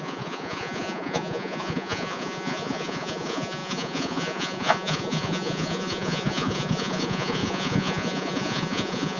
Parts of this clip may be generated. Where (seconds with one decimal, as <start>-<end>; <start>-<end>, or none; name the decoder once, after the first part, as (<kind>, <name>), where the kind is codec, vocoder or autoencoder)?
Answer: 0.0-9.2 (vocoder, Vocos)